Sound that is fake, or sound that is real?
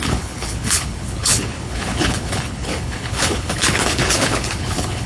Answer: fake